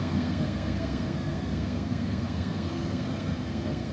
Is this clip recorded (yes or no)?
no